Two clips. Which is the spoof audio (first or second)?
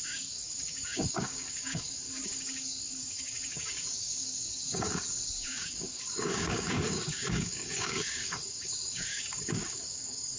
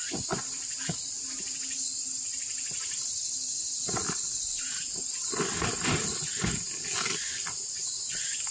first